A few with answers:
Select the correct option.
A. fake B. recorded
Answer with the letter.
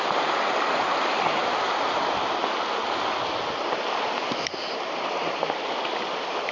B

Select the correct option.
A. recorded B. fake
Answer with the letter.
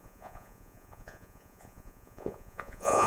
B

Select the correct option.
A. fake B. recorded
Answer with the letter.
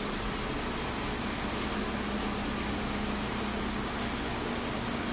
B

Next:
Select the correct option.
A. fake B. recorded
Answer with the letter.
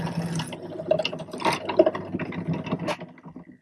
B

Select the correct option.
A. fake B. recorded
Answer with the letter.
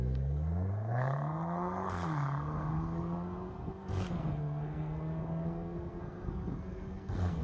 A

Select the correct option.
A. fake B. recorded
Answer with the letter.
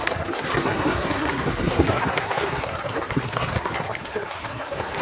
A